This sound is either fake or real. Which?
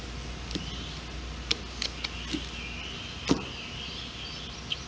real